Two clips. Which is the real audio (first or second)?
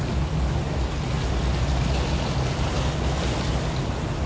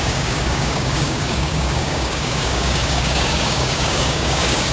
first